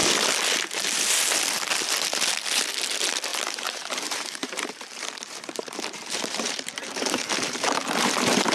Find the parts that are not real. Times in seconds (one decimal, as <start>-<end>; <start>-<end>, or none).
3.3-8.5